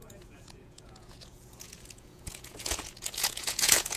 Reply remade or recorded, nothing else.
remade